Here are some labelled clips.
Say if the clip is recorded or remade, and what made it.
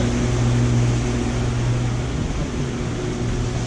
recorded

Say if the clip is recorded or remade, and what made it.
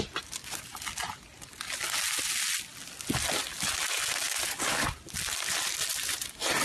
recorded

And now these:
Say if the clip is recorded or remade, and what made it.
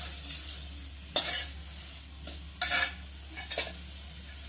recorded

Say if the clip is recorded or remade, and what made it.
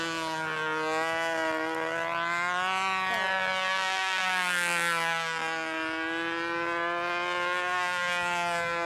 recorded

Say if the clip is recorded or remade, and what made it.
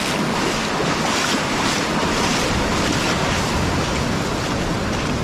recorded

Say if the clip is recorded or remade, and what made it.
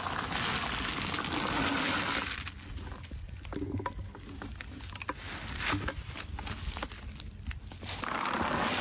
recorded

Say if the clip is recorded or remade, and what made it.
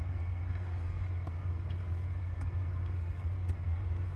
remade, codec, SNAC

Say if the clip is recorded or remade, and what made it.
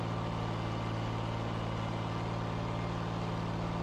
recorded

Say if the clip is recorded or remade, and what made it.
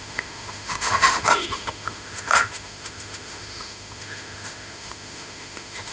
remade, autoencoder, DAC-VAE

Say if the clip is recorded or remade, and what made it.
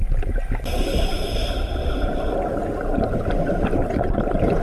remade, vocoder, BigVGAN v2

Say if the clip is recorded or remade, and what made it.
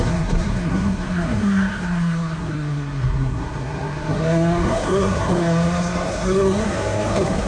remade, codec, SNAC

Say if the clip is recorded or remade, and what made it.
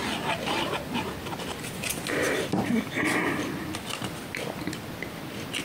recorded